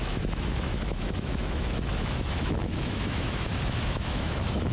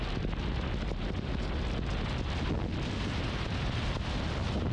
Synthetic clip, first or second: first